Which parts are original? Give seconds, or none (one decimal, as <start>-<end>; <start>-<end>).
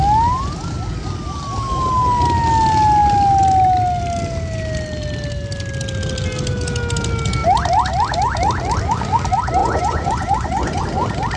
0.0-9.6; 10.8-11.4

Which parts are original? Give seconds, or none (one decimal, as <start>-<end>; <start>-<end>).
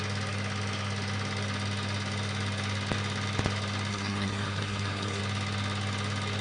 0.0-3.9; 5.2-6.4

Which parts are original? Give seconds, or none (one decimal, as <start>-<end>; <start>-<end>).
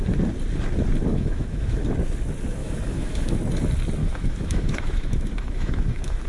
0.0-1.1; 1.8-2.6; 3.4-4.0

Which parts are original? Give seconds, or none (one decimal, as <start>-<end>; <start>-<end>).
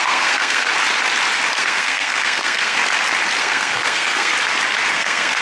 0.7-1.6; 2.8-3.4; 4.3-4.9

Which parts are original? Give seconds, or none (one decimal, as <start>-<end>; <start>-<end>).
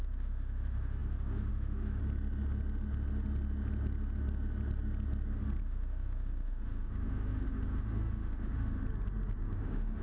2.0-5.6; 8.8-9.5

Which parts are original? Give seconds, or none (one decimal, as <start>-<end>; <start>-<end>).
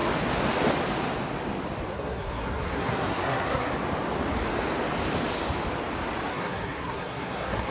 0.0-1.9; 3.7-6.3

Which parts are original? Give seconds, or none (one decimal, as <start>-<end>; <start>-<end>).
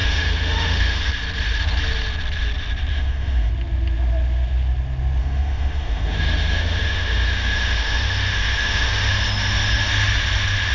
1.1-2.9; 3.5-5.2; 9.1-10.7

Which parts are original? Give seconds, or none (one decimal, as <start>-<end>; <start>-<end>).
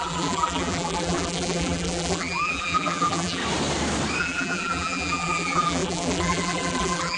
3.4-4.2